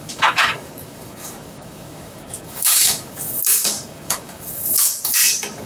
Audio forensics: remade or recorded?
remade